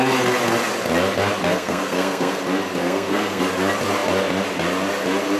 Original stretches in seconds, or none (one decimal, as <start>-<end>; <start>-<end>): 0.0-1.5; 2.4-2.8; 3.4-5.4